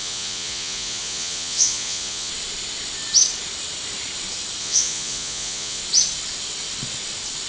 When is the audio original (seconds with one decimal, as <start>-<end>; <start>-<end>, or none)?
2.3-4.6; 5.8-7.5